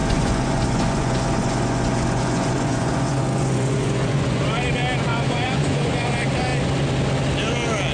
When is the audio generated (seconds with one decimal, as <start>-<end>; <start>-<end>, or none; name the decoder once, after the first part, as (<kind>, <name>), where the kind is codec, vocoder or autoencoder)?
0.0-4.4 (vocoder, Vocos); 5.1-6.1